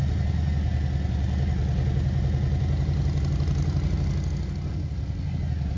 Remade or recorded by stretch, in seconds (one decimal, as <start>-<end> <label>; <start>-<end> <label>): 0.0-5.8 recorded